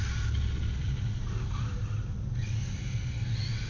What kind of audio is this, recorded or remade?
recorded